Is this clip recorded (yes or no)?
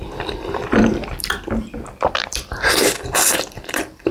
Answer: no